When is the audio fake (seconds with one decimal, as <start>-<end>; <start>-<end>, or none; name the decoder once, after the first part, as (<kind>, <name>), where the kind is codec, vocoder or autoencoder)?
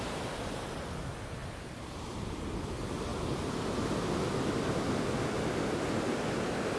none